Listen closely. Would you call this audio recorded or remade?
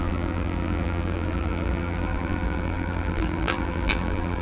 remade